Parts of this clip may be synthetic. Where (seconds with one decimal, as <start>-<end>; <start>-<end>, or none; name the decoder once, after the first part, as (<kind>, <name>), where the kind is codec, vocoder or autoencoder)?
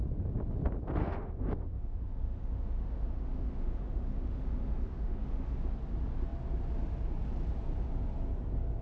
1.0-5.5 (autoencoder, DAC-VAE)